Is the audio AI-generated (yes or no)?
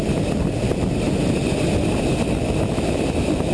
no